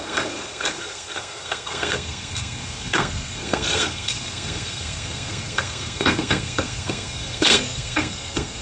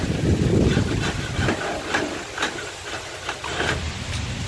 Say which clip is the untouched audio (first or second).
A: second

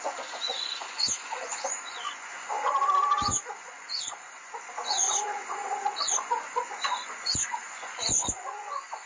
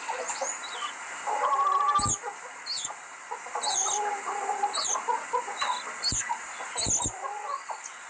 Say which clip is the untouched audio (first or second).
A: second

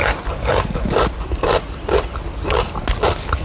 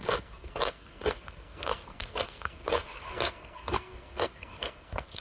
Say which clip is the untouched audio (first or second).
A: first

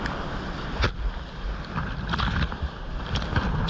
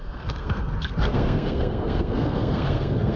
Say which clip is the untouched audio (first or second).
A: first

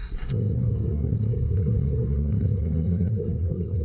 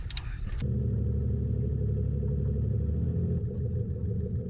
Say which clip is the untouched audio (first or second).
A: second